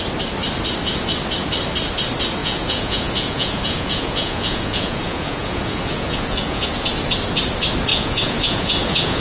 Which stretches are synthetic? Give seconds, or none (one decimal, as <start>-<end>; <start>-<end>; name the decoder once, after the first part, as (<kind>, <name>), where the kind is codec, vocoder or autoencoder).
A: 2.4-6.7 (vocoder, Vocos); 7.9-9.2